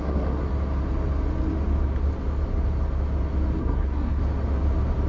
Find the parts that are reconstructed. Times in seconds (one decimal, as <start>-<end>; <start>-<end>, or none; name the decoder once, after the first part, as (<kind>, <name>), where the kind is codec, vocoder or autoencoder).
0.0-0.5 (codec, SNAC); 3.6-4.2